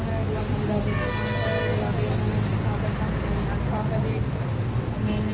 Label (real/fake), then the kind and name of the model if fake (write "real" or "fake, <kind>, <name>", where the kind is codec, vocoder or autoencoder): real